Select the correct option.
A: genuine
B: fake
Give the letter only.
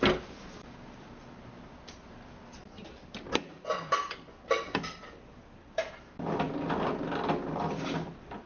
A